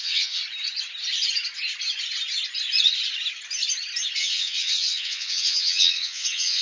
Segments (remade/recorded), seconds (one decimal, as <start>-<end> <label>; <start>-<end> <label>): 0.0-0.4 remade; 0.4-4.2 recorded; 4.2-6.6 remade